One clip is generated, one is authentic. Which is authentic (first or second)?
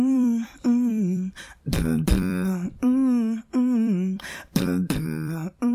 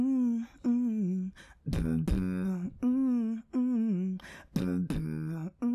second